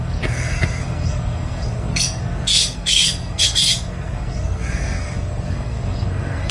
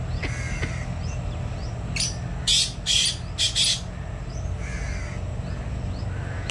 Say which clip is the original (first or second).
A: second